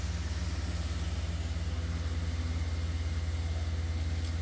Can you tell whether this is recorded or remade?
recorded